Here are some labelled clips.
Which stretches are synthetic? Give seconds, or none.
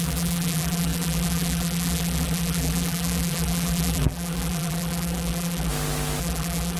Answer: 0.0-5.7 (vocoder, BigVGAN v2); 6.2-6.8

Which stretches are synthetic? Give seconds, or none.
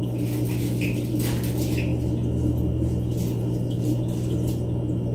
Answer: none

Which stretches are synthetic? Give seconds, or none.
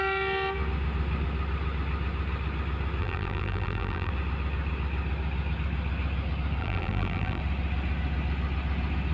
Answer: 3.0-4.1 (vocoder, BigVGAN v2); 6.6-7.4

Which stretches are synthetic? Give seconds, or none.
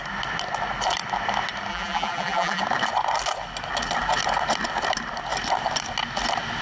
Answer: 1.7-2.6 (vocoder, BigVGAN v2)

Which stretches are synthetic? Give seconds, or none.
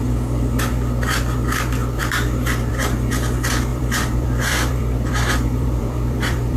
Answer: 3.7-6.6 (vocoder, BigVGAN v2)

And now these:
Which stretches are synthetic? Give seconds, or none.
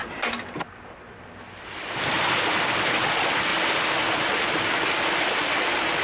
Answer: none